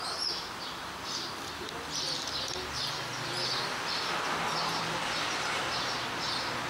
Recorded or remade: recorded